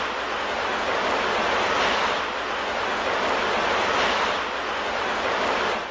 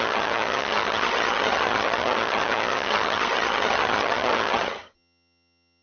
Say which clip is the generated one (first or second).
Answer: second